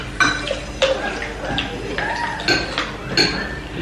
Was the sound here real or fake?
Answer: real